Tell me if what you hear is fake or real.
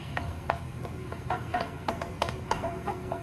fake